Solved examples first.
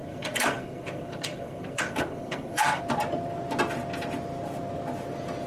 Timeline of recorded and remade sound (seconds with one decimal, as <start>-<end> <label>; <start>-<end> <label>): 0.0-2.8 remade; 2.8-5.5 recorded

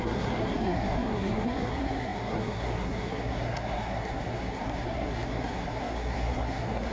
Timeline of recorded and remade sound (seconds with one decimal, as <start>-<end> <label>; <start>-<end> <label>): 0.0-6.9 remade

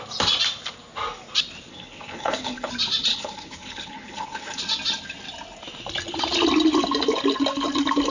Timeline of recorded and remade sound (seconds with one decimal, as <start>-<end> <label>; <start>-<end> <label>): 0.0-1.7 recorded; 1.7-2.7 remade; 2.7-3.1 recorded; 3.1-4.6 remade; 4.6-8.1 recorded

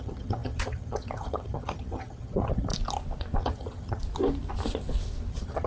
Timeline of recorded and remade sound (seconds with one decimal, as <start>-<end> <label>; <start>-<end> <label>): 0.0-2.7 remade; 2.7-3.4 recorded; 3.4-4.0 remade; 4.0-5.3 recorded; 5.3-5.7 remade

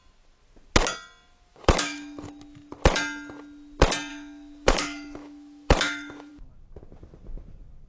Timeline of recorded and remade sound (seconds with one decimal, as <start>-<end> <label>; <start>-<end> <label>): 0.0-1.5 recorded; 1.5-2.3 remade; 2.3-4.1 recorded; 4.1-6.3 remade; 6.3-7.9 recorded